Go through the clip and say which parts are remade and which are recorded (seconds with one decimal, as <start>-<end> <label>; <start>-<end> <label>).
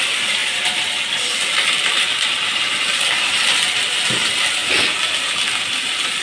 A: 0.0-4.6 remade; 4.6-5.6 recorded; 5.6-6.2 remade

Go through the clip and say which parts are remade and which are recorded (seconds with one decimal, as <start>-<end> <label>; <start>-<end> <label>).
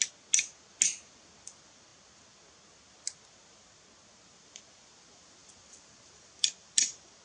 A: 0.0-5.4 recorded; 5.4-7.2 remade